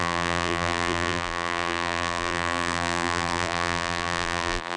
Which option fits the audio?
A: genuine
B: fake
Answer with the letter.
B